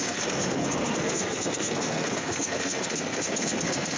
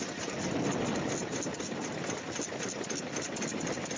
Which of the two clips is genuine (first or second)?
second